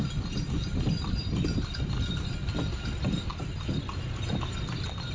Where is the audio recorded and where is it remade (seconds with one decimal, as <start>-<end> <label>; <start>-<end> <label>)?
0.0-5.1 recorded